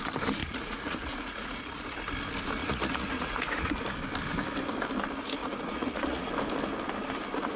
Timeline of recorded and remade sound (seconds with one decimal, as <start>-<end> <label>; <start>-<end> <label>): 0.0-0.4 recorded; 0.4-2.1 remade; 2.1-2.6 recorded; 2.6-3.7 remade; 3.7-5.4 recorded; 5.4-6.3 remade; 6.3-7.6 recorded